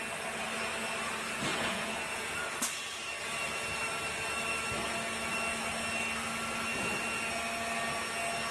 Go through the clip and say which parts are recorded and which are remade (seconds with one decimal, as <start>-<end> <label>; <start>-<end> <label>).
0.0-1.5 recorded; 1.5-2.6 remade; 2.6-8.5 recorded